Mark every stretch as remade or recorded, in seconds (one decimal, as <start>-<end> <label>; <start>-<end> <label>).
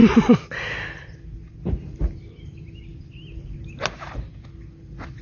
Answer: 0.0-5.2 recorded